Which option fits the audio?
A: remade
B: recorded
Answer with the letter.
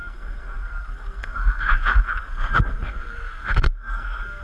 A